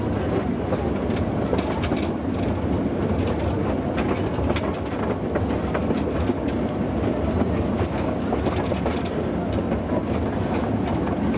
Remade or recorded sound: recorded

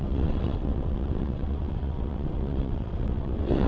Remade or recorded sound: remade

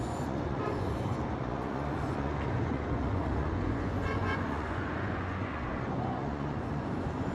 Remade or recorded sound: remade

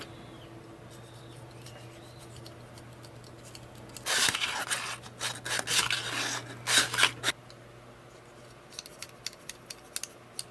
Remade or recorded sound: recorded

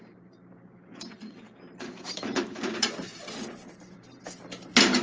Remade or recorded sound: remade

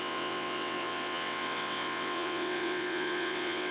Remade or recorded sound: remade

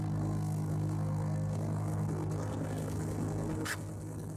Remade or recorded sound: remade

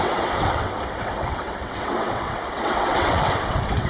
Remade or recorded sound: remade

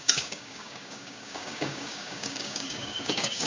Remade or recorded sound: remade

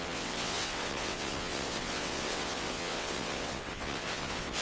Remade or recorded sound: remade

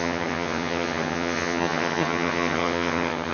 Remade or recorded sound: remade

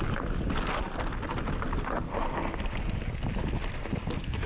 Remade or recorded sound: recorded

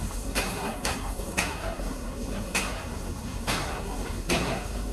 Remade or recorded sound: remade